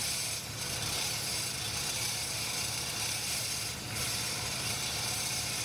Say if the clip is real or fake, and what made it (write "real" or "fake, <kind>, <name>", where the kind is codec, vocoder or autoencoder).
real